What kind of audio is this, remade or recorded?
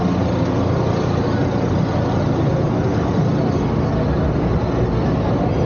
recorded